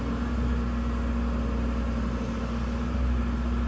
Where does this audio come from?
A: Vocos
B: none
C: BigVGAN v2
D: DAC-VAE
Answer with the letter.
B